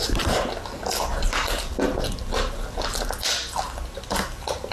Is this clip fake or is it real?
real